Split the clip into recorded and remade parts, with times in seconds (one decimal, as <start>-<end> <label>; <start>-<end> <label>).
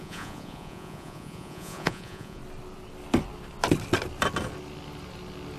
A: 0.0-2.4 remade; 2.4-5.6 recorded